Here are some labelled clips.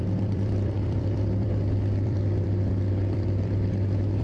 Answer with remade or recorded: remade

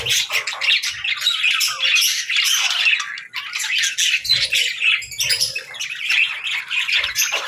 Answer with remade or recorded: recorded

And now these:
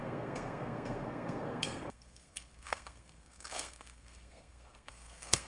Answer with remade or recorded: remade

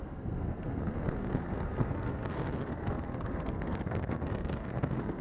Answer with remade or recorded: remade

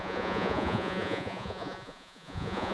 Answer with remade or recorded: remade